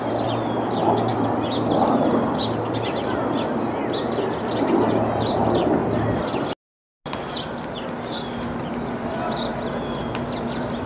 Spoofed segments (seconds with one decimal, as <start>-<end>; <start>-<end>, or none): 0.0-5.8; 7.9-9.5; 10.3-10.9